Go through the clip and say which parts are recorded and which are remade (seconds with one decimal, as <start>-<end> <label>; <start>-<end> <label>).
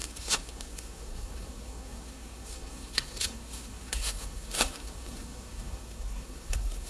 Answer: 0.0-6.9 remade